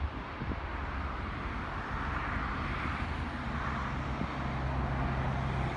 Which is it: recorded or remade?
recorded